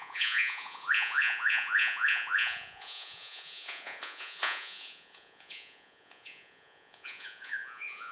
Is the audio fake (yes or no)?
yes